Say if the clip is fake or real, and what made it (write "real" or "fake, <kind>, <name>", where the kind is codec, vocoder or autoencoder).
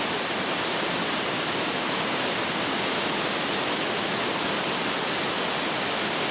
real